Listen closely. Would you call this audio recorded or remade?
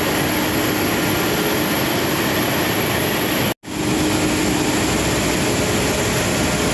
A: recorded